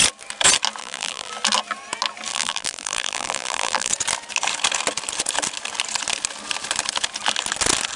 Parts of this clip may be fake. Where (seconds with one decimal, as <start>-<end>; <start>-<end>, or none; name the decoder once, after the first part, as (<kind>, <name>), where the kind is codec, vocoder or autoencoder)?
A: 0.8-1.3 (vocoder, BigVGAN v2); 2.3-3.9